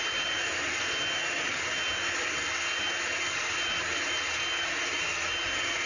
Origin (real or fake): real